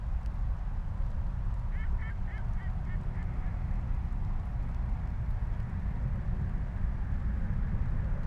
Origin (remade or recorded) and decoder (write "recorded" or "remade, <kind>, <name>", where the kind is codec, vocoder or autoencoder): recorded